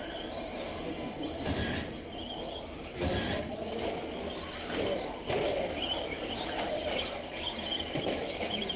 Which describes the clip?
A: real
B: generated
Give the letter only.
A